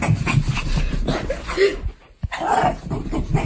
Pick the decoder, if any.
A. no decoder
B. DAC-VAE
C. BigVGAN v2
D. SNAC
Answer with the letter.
A